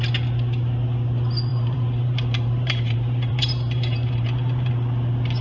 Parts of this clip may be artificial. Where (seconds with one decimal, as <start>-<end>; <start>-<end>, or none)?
1.5-4.7